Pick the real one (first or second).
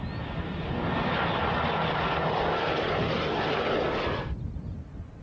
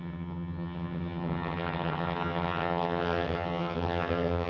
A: first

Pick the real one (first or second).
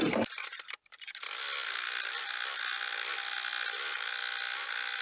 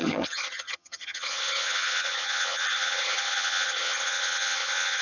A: first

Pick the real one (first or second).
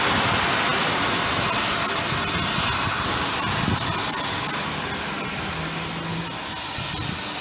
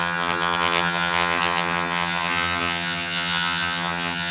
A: first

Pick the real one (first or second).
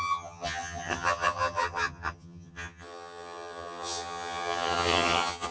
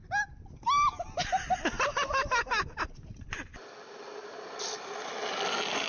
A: second